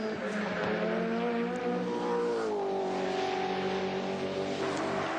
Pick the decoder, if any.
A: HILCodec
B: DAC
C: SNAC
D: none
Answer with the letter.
D